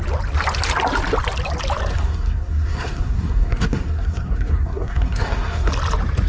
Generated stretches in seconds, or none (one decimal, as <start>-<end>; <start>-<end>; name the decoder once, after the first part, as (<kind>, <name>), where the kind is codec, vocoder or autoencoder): 1.9-5.7 (codec, SNAC)